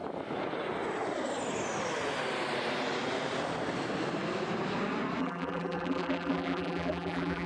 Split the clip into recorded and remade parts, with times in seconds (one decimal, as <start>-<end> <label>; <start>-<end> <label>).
0.0-5.2 recorded; 5.2-7.5 remade